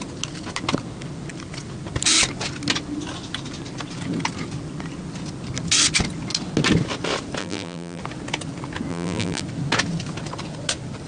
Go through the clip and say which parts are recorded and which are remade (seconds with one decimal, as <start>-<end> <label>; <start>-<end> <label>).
0.0-7.4 recorded; 7.4-8.0 remade; 8.0-8.9 recorded; 8.9-9.4 remade; 9.4-11.1 recorded